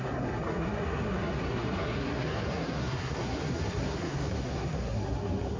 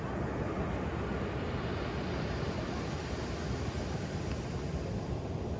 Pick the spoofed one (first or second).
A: first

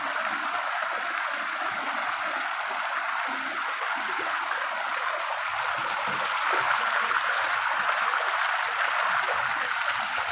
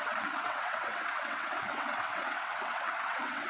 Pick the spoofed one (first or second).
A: second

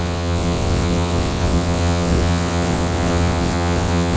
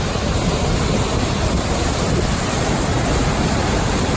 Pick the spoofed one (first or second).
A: first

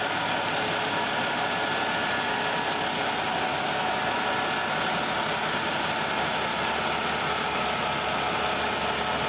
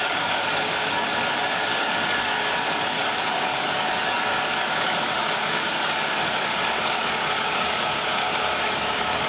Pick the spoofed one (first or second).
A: second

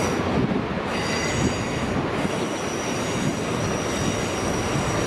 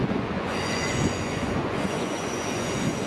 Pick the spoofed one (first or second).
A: second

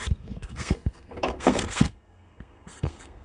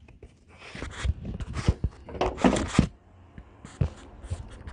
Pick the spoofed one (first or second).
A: first